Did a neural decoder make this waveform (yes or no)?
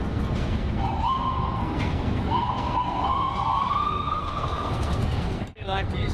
yes